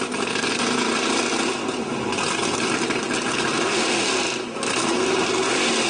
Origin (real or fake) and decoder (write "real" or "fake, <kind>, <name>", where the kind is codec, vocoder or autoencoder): real